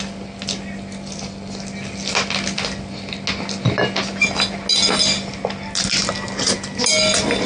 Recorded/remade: recorded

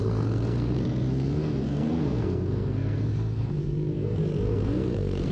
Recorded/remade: remade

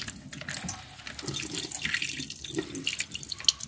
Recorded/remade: recorded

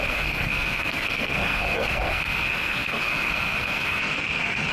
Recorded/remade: remade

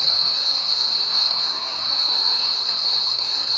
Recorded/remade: remade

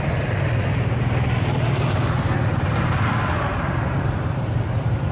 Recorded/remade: recorded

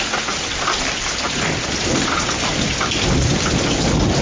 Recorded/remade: recorded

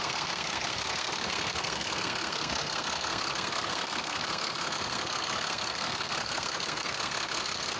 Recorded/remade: remade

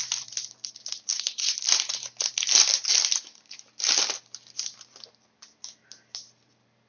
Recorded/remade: recorded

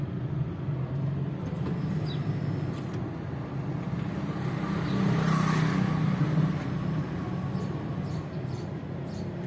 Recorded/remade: recorded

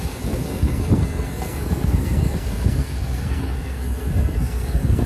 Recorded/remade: remade